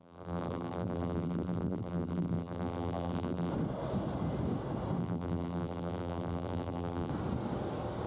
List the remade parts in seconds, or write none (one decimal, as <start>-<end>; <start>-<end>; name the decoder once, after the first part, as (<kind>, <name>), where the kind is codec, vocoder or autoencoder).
0.0-3.5 (vocoder, BigVGAN v2); 5.0-7.1